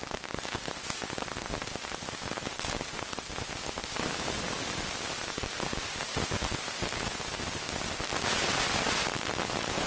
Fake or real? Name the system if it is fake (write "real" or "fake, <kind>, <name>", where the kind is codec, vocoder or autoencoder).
real